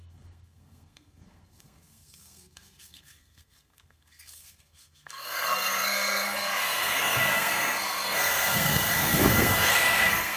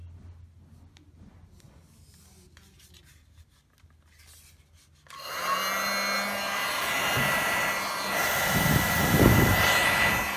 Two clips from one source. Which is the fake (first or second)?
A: first